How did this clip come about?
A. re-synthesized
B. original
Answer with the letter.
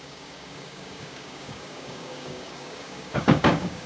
A